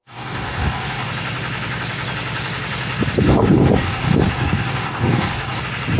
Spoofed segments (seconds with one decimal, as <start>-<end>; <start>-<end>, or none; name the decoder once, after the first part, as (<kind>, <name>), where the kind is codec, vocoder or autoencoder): 0.0-1.1 (codec, DAC); 3.3-5.6